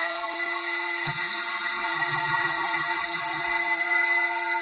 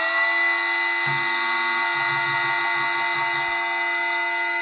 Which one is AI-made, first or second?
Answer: first